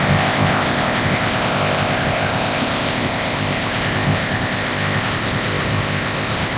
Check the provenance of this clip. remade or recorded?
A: remade